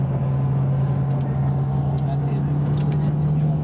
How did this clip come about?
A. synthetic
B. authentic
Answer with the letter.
B